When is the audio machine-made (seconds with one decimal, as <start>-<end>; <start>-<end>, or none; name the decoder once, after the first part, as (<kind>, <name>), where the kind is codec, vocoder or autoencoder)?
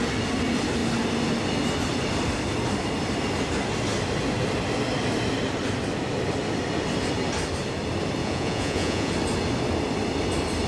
8.2-9.1 (vocoder, Vocos)